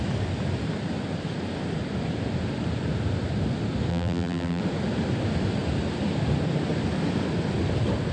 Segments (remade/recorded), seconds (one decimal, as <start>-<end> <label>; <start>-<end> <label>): 0.0-3.9 recorded; 3.9-4.6 remade; 4.6-8.1 recorded